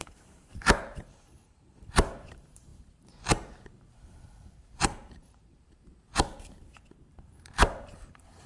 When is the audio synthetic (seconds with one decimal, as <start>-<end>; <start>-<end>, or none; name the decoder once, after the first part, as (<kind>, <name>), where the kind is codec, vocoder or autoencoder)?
0.0-5.9 (vocoder, BigVGAN v2); 7.1-8.5